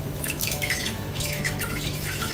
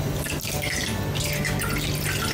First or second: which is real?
second